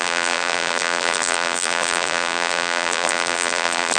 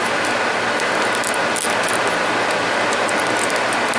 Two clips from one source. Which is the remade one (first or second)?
first